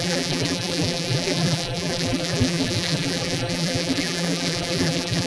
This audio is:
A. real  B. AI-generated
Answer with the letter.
B